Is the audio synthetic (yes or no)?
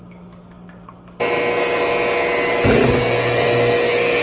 no